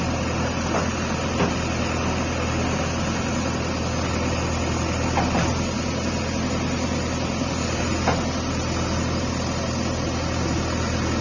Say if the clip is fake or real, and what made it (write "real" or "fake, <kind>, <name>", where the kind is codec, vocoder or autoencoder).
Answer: real